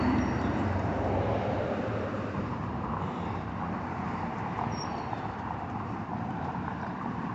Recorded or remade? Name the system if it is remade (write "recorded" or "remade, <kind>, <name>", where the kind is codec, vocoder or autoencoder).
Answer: remade, vocoder, BigVGAN v2